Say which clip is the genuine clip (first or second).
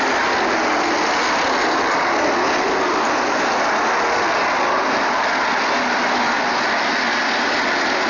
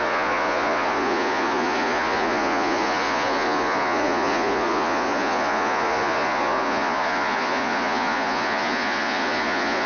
first